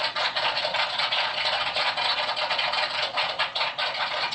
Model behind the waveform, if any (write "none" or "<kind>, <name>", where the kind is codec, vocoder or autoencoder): vocoder, Vocos